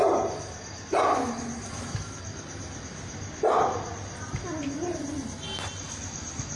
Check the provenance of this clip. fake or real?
real